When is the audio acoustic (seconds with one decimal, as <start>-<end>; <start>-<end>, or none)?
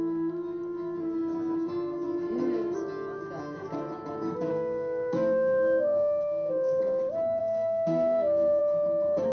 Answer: 0.0-4.5; 6.8-7.4; 8.6-9.3